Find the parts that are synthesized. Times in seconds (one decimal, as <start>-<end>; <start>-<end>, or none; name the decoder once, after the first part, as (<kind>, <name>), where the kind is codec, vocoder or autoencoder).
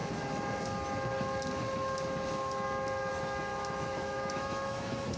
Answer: 3.5-5.2 (autoencoder, DAC-VAE)